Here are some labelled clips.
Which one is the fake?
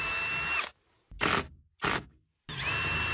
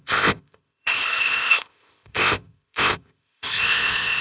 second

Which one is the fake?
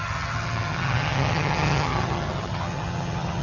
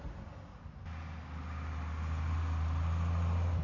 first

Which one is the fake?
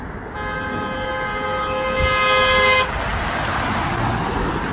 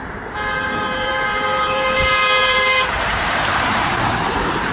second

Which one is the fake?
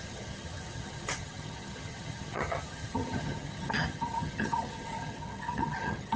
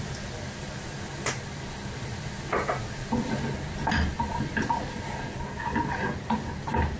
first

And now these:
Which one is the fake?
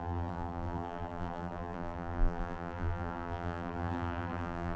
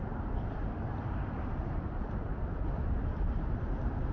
first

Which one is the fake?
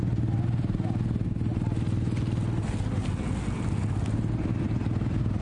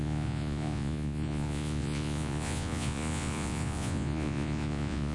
second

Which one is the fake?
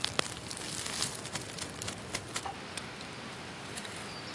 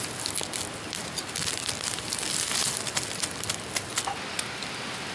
first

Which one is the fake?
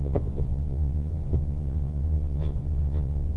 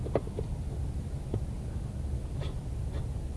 first